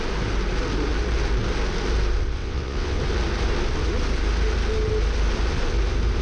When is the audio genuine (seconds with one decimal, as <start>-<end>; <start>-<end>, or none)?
0.0-2.4; 3.0-6.2